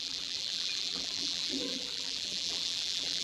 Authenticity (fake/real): fake